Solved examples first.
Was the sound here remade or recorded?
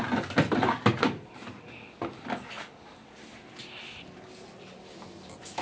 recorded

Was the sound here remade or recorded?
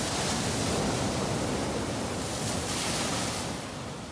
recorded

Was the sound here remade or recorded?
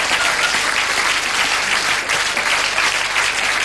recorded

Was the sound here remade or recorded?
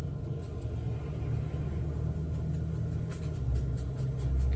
recorded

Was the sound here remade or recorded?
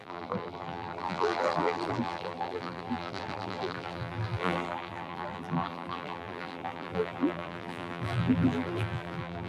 remade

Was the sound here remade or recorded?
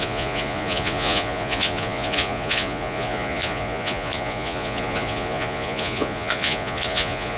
remade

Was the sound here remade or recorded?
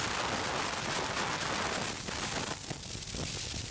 recorded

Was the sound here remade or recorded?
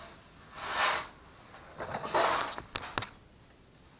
recorded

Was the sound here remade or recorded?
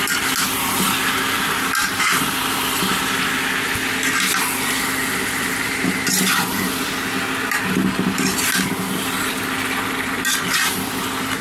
recorded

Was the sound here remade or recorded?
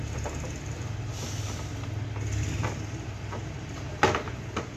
recorded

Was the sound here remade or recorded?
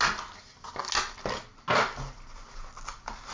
recorded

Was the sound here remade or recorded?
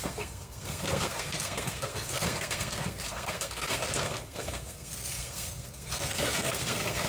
remade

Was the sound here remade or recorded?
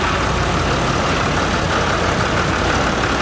recorded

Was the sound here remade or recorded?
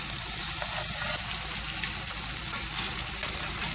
recorded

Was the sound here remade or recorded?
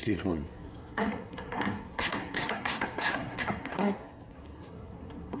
remade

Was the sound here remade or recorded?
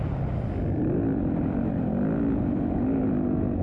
recorded